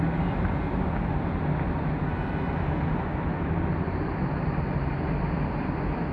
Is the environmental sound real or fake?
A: real